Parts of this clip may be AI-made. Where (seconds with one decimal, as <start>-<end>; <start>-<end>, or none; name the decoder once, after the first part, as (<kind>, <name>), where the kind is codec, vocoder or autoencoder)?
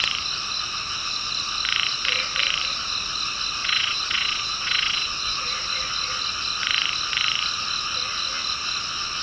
3.6-5.5 (vocoder, Vocos)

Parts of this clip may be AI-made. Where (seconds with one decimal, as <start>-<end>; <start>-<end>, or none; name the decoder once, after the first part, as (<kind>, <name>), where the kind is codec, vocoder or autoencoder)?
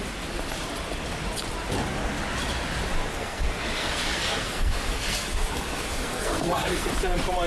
3.1-6.9 (codec, SNAC)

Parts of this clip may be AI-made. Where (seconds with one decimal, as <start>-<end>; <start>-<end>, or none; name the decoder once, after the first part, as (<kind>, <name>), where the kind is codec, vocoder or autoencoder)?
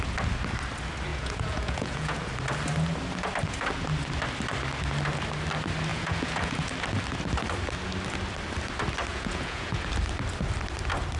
1.1-2.3 (vocoder, Vocos); 5.9-6.7; 9.1-9.7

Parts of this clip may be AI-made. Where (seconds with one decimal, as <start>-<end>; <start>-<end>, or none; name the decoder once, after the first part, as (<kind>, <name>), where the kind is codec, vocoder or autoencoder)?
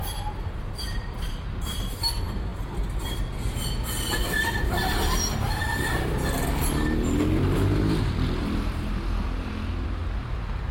none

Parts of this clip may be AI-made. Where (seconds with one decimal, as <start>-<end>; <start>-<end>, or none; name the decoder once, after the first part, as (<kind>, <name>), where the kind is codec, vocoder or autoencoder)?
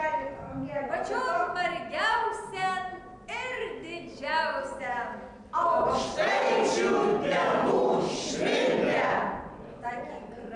7.1-7.7 (vocoder, Vocos); 8.5-10.0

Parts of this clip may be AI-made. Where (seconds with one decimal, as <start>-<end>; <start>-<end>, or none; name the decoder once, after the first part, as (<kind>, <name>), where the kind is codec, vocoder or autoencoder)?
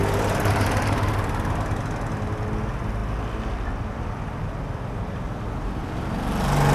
none